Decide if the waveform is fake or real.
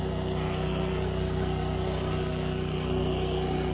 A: fake